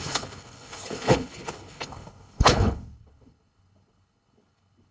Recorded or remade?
remade